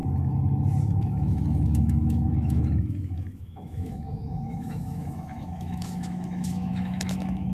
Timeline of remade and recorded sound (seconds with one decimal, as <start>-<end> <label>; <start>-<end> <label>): 0.0-0.8 recorded; 0.8-7.5 remade